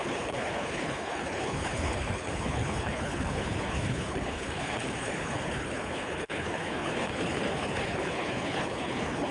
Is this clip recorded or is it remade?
remade